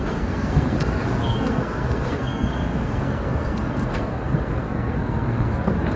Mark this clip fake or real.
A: fake